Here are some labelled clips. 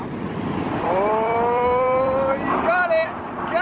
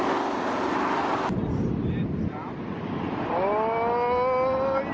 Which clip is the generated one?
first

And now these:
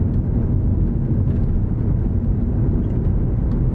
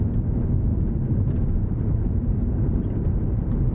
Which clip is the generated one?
second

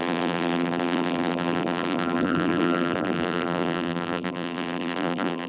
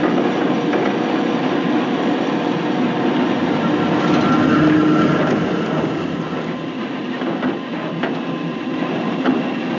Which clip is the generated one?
first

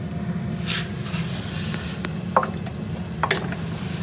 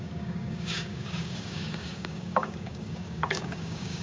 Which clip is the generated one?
second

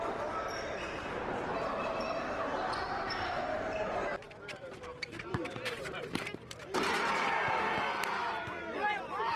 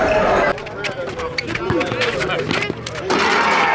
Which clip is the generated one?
first